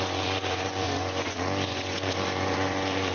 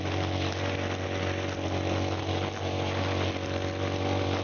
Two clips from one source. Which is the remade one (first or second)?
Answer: first